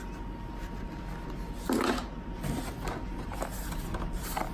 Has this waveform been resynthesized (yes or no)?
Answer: no